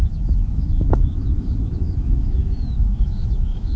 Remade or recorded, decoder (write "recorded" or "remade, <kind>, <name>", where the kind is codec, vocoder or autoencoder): remade, autoencoder, DAC-VAE